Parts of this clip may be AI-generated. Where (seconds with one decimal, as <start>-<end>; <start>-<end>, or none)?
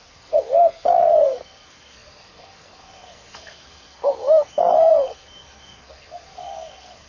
0.0-7.1